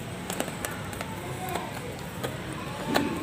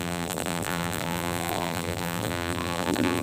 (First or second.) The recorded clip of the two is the first